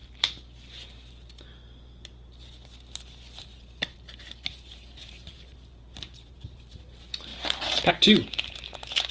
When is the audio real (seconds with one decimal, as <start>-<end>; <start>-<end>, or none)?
0.0-3.4